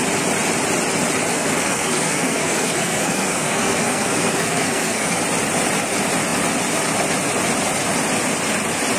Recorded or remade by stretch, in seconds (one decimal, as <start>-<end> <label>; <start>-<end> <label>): 0.0-1.3 recorded; 1.3-5.2 remade; 5.2-9.0 recorded